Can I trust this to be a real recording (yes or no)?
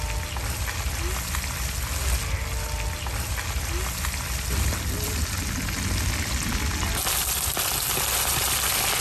yes